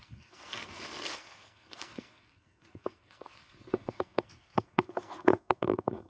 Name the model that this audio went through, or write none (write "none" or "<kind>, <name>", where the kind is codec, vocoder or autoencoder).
codec, SNAC